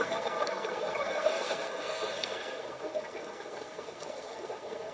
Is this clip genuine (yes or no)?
no